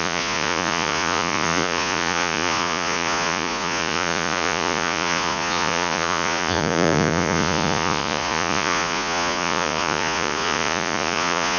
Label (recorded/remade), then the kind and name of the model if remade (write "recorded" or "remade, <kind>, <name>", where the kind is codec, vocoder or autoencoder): remade, vocoder, Vocos